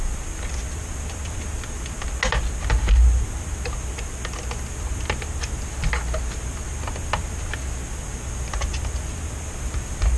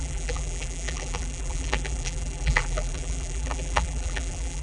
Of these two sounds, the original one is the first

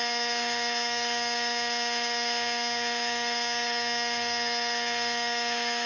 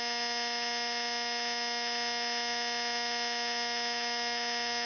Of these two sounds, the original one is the second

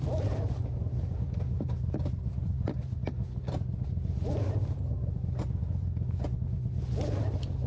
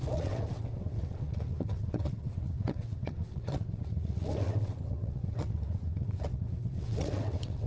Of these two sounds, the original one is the first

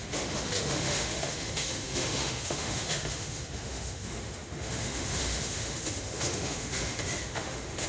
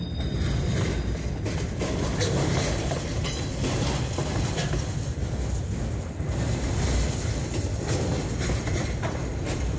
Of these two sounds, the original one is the second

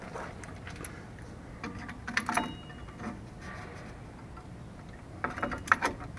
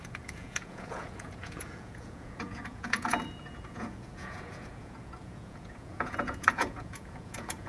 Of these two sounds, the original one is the first